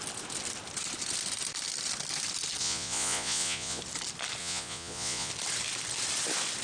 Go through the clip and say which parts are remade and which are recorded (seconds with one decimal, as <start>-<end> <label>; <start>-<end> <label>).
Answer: 0.0-2.6 recorded; 2.6-3.8 remade; 3.8-4.4 recorded; 4.4-5.3 remade; 5.3-6.6 recorded